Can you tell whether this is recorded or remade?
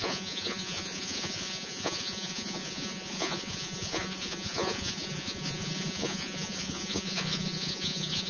remade